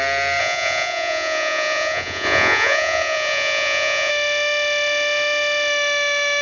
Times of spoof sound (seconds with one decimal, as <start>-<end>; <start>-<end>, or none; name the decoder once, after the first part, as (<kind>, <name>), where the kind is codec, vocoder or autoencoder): 0.4-4.1 (vocoder, Vocos)